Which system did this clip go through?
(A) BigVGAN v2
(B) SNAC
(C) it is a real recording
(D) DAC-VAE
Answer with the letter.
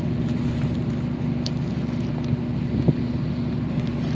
C